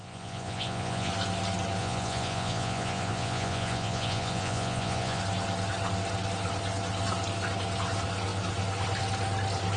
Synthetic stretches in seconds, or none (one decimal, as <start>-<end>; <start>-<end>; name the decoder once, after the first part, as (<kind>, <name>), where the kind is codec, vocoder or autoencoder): 0.0-1.1 (vocoder, Vocos); 1.8-5.2